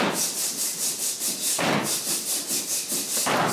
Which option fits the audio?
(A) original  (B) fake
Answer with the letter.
A